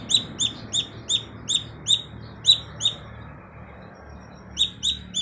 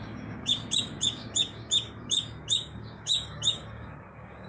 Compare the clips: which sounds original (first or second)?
first